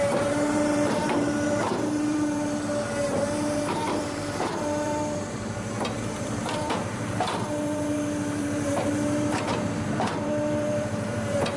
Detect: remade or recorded remade